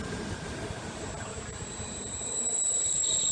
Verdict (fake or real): fake